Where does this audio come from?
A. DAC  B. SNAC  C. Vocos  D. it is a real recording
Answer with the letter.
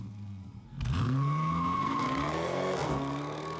B